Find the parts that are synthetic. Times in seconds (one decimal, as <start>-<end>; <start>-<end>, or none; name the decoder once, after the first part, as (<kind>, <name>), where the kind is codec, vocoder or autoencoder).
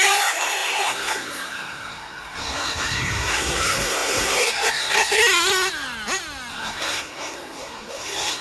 0.0-5.2 (codec, SNAC); 6.5-8.4